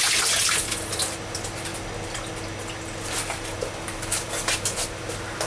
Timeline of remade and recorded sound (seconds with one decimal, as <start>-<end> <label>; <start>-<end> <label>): 0.0-5.5 recorded